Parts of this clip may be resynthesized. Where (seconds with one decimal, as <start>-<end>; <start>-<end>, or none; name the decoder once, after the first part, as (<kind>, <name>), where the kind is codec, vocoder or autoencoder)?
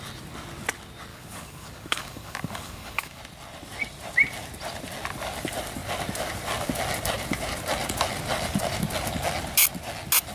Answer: 1.1-3.2 (codec, DAC)